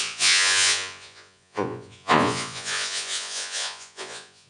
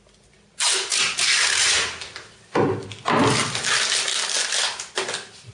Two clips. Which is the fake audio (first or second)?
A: first